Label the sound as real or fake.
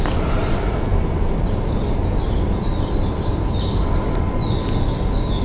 real